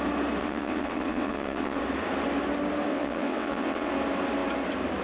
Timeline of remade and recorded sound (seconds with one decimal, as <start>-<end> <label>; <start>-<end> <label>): 0.0-0.4 recorded; 0.4-1.8 remade; 1.8-2.9 recorded; 2.9-3.9 remade; 3.9-5.0 recorded